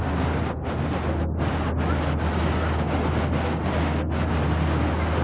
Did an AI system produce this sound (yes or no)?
no